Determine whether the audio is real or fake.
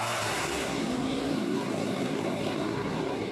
fake